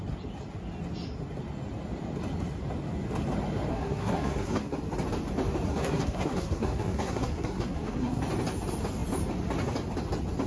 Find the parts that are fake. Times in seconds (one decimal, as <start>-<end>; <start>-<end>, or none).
3.7-4.8; 5.7-8.2